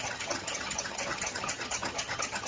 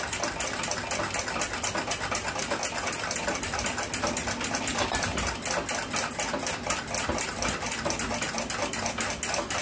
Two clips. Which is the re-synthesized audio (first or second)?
first